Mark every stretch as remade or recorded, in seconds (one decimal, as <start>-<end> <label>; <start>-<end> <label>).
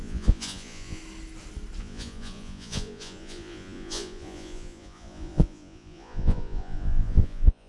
0.0-1.0 remade; 1.0-1.8 recorded; 1.8-7.7 remade